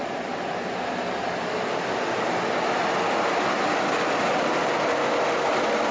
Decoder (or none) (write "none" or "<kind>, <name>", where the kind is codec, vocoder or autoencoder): none